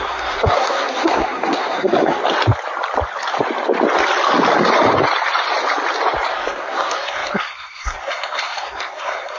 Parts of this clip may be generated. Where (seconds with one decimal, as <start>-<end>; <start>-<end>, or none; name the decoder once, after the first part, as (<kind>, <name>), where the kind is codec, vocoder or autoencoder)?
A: 0.0-2.2 (codec, SNAC); 6.3-9.4